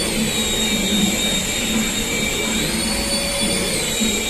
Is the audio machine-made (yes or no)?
no